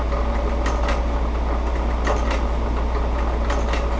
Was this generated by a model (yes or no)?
no